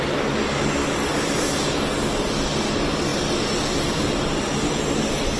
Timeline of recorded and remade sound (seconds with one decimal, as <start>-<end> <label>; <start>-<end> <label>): 0.0-3.1 recorded; 3.1-4.7 remade; 4.7-5.4 recorded